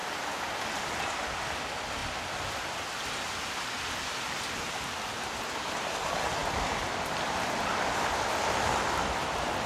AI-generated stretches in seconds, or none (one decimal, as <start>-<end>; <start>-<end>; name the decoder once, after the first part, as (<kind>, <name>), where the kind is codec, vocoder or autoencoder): 2.0-5.9 (vocoder, BigVGAN v2); 6.4-9.2